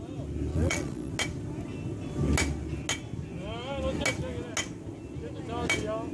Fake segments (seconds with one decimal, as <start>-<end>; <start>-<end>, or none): 0.5-1.1